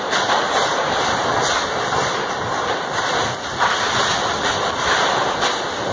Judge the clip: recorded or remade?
remade